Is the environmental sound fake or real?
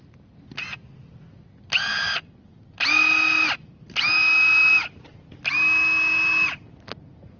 real